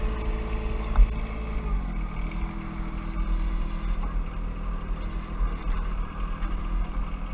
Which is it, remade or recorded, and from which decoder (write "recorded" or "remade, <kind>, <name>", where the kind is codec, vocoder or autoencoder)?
recorded